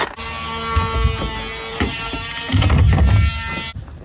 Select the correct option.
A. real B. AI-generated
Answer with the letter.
A